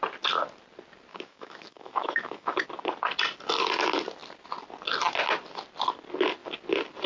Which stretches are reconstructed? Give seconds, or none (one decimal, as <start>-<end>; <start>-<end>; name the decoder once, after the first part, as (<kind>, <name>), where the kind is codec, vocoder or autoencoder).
1.1-2.6 (autoencoder, DAC-VAE)